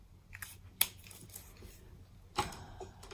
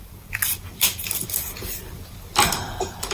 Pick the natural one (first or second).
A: first